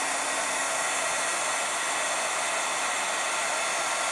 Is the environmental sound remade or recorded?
recorded